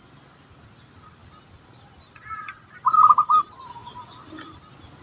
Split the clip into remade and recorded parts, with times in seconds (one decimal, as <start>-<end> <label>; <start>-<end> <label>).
0.0-5.0 recorded